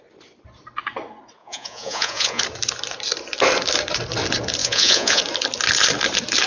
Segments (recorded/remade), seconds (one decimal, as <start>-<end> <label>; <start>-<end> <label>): 0.0-1.4 recorded; 1.4-2.4 remade; 2.4-4.6 recorded; 4.6-5.2 remade; 5.2-6.5 recorded